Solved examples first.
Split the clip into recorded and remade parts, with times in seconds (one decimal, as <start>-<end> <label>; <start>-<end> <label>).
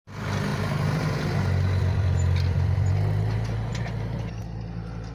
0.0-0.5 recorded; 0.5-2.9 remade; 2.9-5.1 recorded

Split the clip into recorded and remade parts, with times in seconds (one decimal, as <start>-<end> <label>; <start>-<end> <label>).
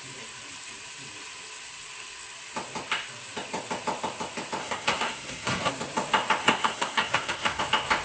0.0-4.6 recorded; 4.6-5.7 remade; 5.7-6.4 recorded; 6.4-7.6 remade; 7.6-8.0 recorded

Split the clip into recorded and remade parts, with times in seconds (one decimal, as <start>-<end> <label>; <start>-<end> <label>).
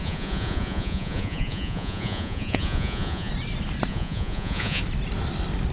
0.0-3.3 remade; 3.3-3.9 recorded; 3.9-4.8 remade; 4.8-5.7 recorded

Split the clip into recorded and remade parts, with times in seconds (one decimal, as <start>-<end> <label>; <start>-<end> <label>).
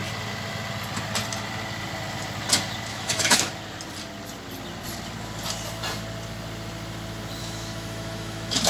0.0-2.9 recorded; 2.9-3.5 remade; 3.5-7.4 recorded; 7.4-8.7 remade